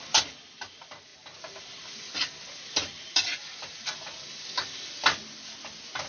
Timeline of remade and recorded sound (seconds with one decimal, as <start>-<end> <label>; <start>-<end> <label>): 0.0-6.1 recorded